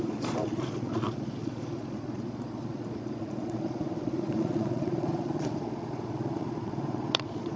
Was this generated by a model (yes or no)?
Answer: yes